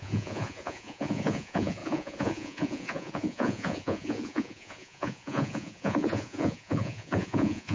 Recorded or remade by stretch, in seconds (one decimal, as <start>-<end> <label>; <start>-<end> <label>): 0.0-7.7 remade